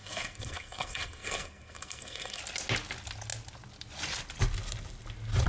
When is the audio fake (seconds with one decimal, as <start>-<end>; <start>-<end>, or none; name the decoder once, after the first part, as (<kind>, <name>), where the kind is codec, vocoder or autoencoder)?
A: 0.0-2.4 (codec, SNAC)